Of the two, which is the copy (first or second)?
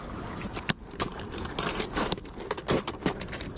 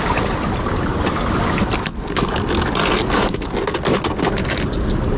first